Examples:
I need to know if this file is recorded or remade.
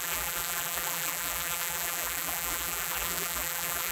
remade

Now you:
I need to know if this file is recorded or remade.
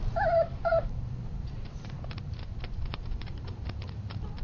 remade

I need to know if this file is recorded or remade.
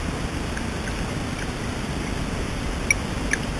recorded